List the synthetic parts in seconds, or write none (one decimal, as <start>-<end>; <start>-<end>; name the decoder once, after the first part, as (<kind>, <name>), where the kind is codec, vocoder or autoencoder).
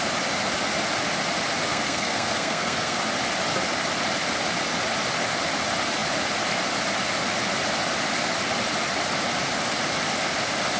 1.7-3.0 (codec, SNAC)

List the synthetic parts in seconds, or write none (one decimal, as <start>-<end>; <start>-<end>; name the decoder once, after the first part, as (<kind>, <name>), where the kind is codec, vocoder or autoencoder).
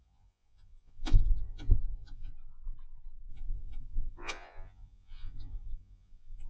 0.0-2.3 (vocoder, Vocos); 3.3-6.5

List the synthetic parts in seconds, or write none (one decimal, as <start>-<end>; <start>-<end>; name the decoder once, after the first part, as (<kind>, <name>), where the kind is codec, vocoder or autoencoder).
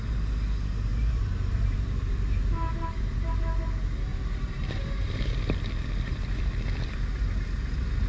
0.9-3.3 (vocoder, BigVGAN v2); 4.1-5.3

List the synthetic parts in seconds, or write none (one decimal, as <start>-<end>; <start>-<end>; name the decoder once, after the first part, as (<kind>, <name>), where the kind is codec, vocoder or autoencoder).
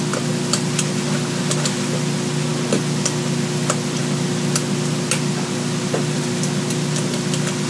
none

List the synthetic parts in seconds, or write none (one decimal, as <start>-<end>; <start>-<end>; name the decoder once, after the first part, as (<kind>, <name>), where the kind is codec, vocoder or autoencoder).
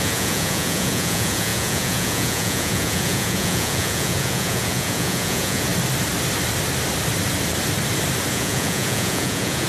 0.0-5.7 (vocoder, Vocos); 8.3-9.7